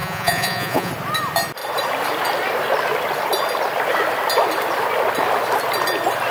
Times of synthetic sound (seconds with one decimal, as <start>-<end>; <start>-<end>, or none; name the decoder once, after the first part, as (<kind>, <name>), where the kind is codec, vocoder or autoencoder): 0.0-0.9 (vocoder, Vocos)